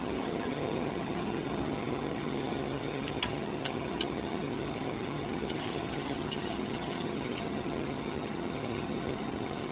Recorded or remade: remade